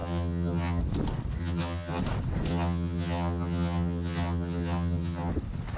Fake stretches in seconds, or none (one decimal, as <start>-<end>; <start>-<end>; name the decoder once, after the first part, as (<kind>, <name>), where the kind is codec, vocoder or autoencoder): 0.0-0.8 (vocoder, HiFi-GAN); 1.4-2.0; 2.5-5.3